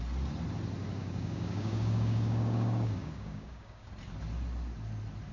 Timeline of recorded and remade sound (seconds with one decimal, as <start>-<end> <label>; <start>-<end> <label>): 0.0-1.0 recorded; 1.0-3.9 remade; 3.9-5.3 recorded